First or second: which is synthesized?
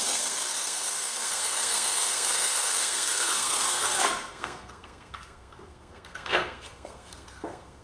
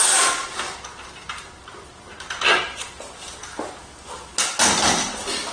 first